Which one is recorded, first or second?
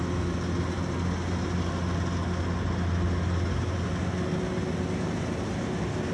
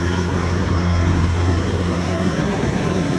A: first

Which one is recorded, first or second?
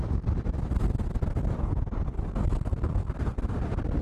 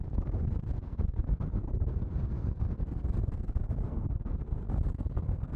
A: first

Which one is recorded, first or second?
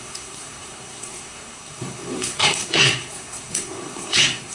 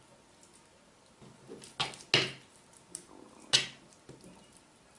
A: second